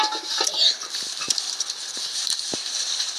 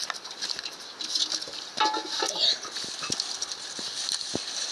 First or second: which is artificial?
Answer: first